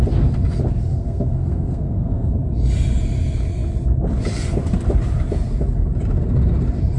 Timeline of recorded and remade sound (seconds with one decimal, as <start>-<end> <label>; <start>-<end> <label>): 0.0-0.9 recorded; 0.9-2.3 remade; 2.3-7.0 recorded